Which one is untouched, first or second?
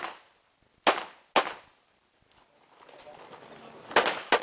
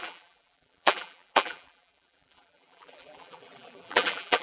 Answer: first